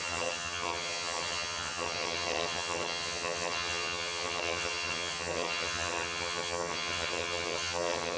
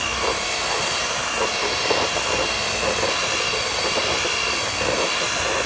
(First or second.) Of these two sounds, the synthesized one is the first